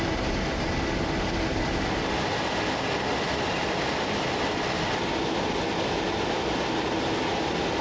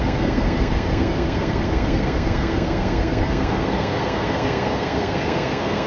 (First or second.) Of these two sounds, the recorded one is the first